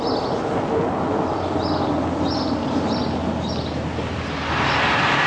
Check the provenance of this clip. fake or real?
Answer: real